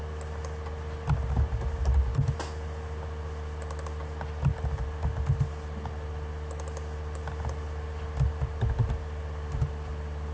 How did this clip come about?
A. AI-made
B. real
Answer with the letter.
B